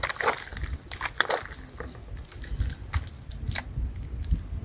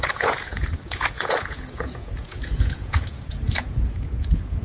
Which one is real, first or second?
first